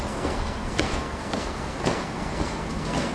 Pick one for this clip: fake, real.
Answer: fake